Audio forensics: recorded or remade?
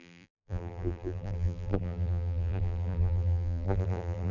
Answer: remade